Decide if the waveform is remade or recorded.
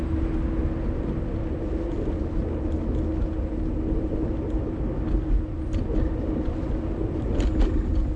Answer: recorded